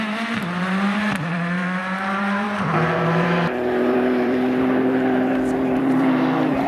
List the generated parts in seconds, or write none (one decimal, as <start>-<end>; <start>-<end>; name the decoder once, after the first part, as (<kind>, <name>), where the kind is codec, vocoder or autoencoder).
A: 0.0-6.7 (vocoder, BigVGAN v2)